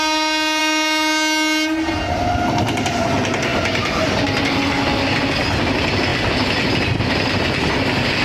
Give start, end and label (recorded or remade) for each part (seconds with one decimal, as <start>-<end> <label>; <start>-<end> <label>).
0.0-8.2 recorded

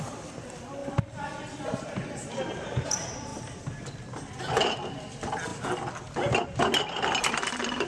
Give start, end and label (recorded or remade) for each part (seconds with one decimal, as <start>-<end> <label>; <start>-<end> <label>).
0.0-5.5 remade; 5.5-7.2 recorded; 7.2-7.9 remade

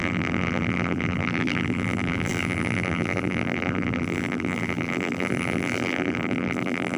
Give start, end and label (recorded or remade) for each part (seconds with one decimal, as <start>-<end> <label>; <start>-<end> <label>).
0.0-7.0 remade

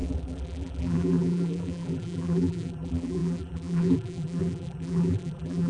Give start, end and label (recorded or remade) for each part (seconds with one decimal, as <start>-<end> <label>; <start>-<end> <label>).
0.0-5.7 remade

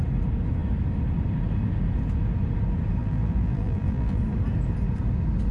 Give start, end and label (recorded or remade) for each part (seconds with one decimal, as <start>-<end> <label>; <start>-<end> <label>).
0.0-3.0 recorded; 3.0-4.2 remade; 4.2-5.5 recorded

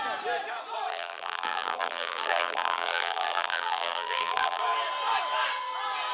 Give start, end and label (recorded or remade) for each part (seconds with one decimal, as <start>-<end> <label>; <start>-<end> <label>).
0.0-0.9 recorded; 0.9-4.6 remade; 4.6-6.1 recorded